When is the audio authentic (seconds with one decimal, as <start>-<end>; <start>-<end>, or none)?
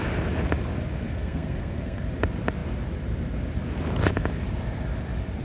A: 0.0-1.0; 2.0-5.4